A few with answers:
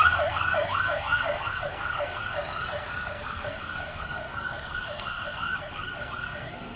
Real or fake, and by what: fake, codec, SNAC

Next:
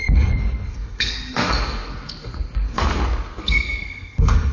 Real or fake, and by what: fake, codec, SNAC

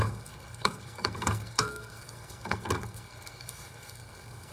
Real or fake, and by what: fake, codec, SNAC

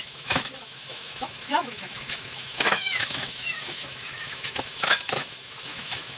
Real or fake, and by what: fake, autoencoder, DAC-VAE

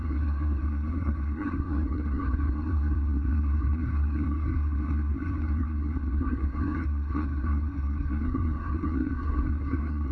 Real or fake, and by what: fake, codec, SNAC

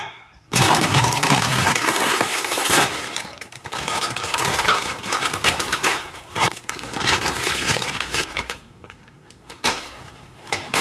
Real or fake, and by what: fake, codec, SNAC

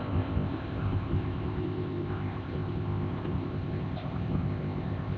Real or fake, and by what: fake, codec, ZipCodec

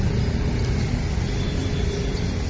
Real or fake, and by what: real